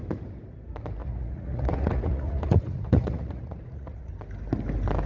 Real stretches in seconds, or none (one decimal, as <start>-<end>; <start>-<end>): 0.0-1.0; 4.1-5.1

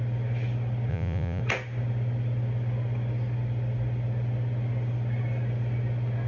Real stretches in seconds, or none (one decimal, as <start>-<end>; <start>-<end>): 0.0-0.9; 1.4-6.3

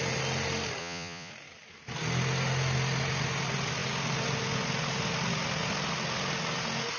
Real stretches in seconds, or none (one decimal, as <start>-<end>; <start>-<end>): 0.0-0.8; 1.3-7.0